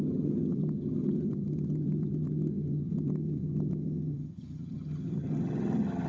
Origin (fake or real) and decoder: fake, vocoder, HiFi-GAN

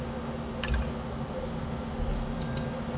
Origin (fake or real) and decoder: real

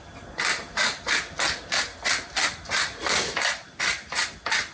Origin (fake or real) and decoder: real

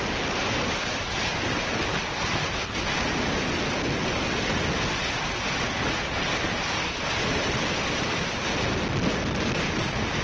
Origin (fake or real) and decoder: real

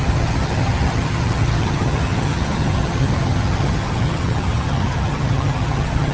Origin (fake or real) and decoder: fake, vocoder, HiFi-GAN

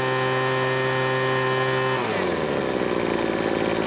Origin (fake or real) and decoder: real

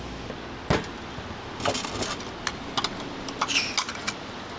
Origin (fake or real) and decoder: real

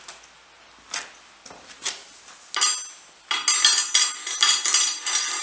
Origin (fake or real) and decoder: real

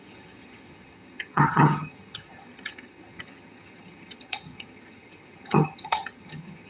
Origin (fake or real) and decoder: fake, vocoder, HiFi-GAN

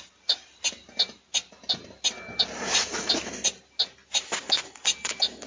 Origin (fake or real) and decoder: real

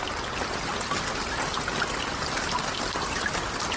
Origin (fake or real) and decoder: real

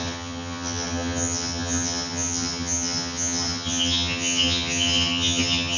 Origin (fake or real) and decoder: fake, vocoder, HiFi-GAN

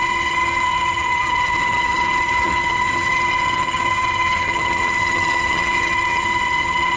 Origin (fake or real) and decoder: fake, vocoder, HiFi-GAN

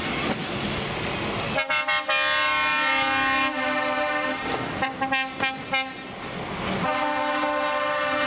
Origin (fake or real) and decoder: real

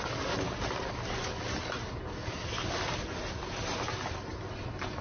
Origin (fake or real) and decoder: real